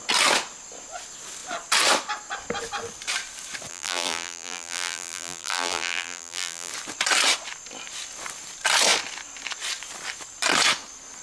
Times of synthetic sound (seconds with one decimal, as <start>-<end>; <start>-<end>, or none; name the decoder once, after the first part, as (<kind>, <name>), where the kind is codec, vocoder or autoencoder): 3.7-6.7 (vocoder, BigVGAN v2)